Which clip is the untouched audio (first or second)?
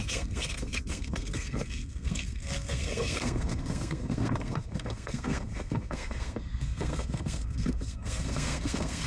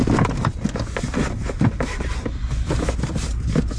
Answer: second